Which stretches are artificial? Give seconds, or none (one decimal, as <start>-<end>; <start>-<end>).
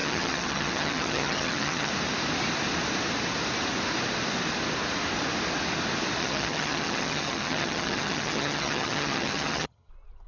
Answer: 0.0-1.9; 6.2-9.9